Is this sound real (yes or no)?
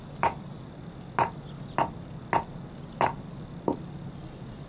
yes